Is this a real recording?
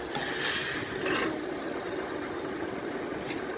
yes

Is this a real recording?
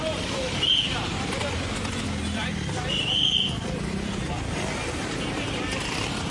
no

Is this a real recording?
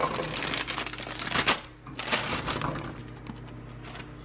yes